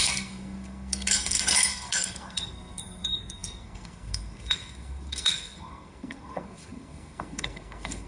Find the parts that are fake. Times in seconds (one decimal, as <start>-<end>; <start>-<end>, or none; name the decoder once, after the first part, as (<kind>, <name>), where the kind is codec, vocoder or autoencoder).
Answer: 0.0-8.1 (codec, SNAC)